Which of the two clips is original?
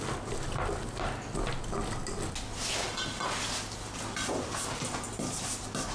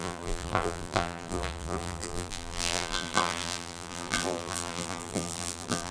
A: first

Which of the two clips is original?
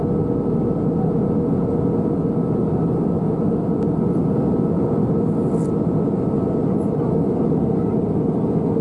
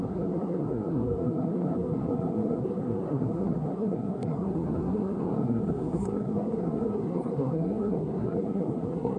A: first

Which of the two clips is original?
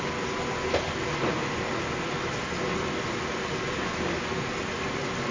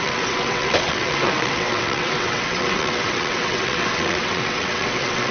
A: first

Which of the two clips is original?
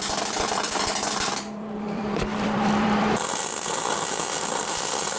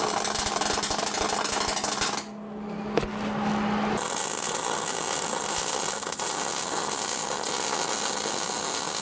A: second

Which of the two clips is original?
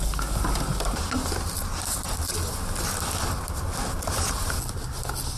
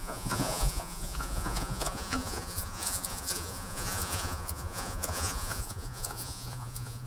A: first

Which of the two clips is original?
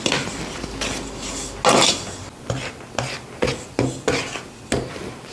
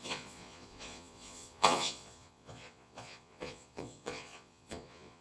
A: first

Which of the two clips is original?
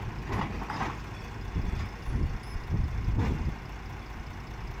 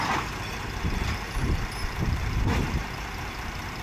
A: first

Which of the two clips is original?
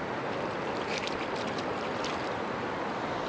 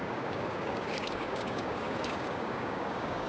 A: first